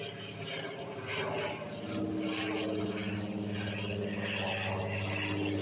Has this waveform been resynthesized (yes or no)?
no